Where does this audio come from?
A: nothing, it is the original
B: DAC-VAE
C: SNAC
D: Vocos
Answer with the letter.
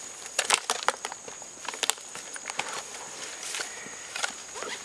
A